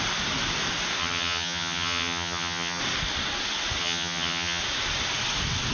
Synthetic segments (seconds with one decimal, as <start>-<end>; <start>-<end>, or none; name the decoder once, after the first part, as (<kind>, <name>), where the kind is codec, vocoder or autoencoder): 1.0-2.8 (vocoder, HiFi-GAN); 3.8-4.6